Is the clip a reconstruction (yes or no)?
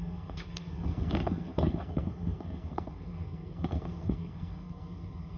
yes